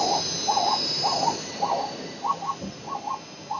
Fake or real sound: real